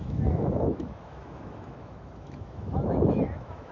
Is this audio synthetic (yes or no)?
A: yes